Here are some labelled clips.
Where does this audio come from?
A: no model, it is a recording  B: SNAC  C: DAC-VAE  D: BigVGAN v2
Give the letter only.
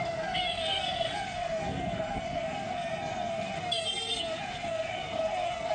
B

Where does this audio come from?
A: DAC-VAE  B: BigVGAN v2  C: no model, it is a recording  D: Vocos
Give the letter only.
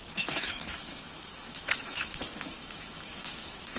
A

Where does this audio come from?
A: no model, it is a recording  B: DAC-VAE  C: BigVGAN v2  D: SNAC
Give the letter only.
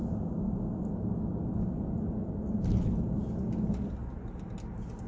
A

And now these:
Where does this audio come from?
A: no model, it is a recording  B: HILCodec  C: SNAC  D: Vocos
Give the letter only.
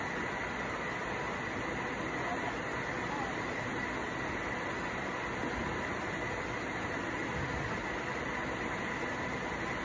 A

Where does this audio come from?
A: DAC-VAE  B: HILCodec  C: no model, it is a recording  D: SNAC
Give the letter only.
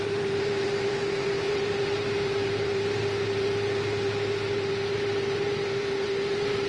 C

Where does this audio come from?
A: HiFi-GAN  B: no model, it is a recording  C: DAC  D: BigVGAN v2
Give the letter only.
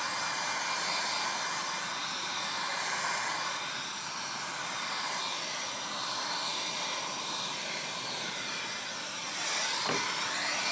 B